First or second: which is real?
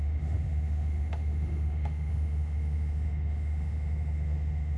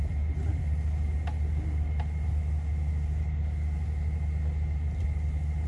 second